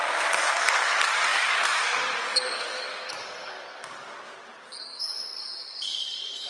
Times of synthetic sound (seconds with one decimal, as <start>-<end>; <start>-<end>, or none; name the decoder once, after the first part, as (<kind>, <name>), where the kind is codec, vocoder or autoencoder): 0.0-6.5 (codec, DAC)